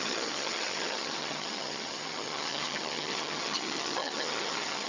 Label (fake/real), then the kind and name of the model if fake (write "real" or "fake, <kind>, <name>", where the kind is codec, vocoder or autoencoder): fake, vocoder, HiFi-GAN